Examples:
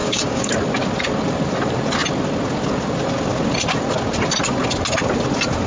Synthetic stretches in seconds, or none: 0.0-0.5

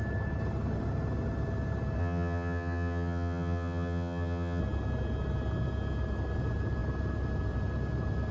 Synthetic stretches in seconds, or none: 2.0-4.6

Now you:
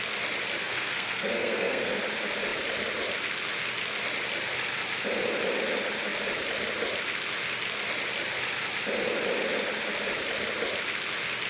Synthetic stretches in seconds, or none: 0.6-2.0

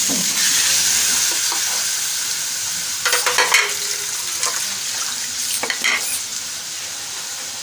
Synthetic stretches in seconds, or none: 0.0-0.4; 5.0-7.6